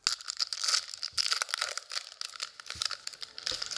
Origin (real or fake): real